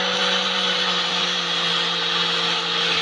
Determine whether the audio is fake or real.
fake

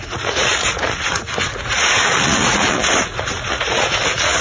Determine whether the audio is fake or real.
fake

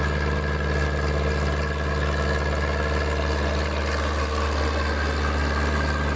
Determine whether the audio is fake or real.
real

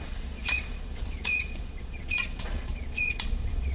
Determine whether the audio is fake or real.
fake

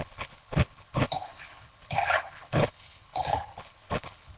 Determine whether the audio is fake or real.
fake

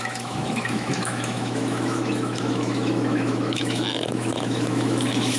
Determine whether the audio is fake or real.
fake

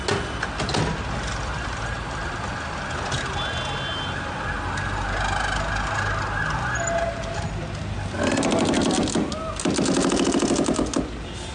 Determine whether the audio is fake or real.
real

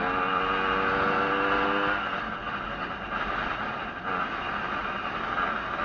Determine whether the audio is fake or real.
real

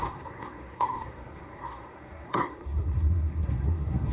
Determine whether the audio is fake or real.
fake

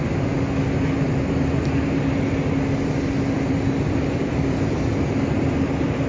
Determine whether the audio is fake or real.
real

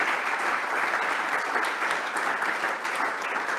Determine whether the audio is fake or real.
real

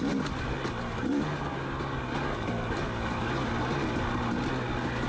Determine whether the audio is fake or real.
real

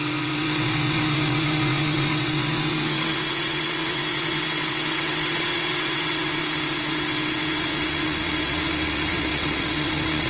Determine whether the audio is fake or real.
fake